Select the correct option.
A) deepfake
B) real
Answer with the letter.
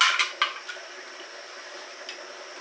B